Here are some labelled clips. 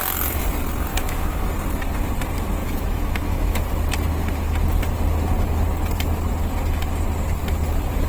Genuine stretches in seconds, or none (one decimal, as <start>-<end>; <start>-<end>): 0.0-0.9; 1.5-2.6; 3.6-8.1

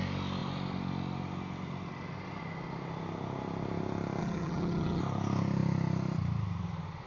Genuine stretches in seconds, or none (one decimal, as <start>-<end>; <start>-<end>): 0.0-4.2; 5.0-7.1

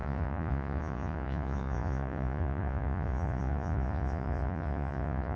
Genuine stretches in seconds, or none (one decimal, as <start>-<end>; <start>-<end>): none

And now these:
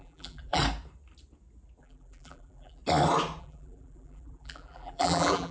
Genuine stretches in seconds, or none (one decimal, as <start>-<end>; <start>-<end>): 0.6-1.8; 2.8-3.4

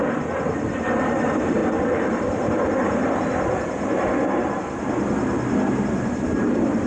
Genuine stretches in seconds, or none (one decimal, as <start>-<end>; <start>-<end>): 1.6-5.7

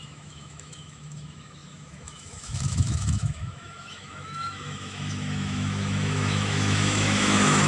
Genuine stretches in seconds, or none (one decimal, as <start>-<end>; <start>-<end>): none